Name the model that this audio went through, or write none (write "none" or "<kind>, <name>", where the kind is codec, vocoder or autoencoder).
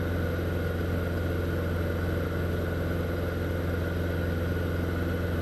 none